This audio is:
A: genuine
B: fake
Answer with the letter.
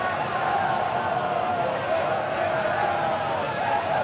A